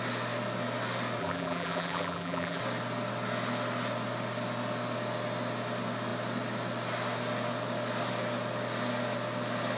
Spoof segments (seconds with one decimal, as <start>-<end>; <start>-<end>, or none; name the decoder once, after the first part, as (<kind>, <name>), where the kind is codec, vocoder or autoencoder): 1.2-2.6 (vocoder, BigVGAN v2)